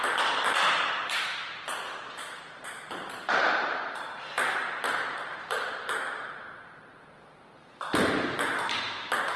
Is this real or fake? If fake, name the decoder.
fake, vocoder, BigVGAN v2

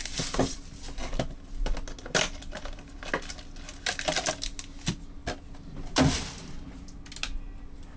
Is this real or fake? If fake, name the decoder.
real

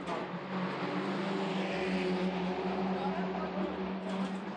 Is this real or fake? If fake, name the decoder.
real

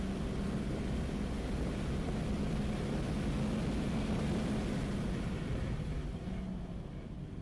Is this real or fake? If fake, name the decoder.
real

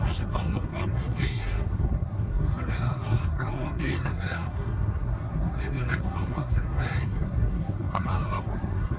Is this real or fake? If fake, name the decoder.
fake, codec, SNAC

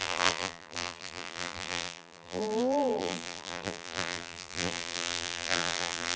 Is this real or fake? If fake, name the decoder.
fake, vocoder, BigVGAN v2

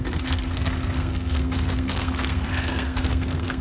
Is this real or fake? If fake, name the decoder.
fake, codec, SNAC